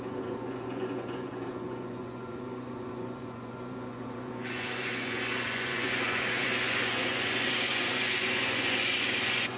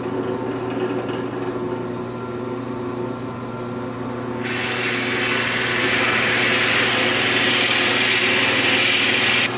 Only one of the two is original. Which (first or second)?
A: second